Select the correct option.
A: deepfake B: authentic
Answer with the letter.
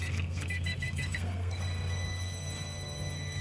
A